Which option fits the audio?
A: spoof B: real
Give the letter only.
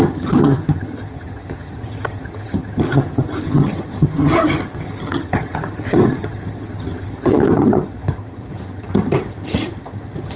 A